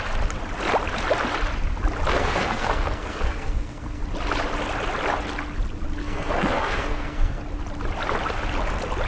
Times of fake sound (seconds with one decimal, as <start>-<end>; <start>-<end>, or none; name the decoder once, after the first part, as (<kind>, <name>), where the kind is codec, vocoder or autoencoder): 2.1-4.0 (codec, SNAC); 6.0-7.4